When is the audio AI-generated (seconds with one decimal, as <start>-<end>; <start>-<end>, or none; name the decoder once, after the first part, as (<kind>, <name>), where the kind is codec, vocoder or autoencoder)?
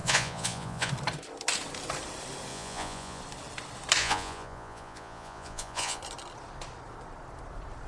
0.0-0.9 (vocoder, Vocos); 2.5-3.2; 4.0-6.0